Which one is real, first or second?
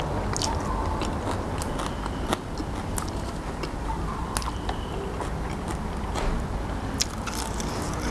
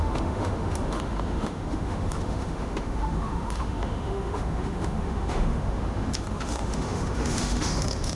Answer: first